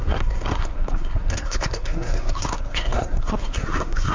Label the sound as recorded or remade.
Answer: remade